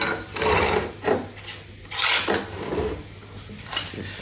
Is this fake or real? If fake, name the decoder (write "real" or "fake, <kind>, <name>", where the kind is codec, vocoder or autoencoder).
real